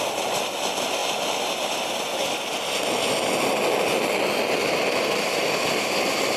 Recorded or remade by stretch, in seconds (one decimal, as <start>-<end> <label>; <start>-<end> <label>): 0.0-6.4 recorded

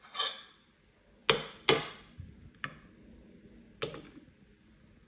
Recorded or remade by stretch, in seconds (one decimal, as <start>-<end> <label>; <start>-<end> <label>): 0.0-5.1 recorded